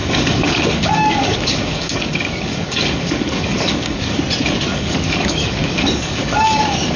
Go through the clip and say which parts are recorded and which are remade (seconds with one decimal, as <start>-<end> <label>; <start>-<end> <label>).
0.0-4.2 remade; 4.2-4.7 recorded; 4.7-7.0 remade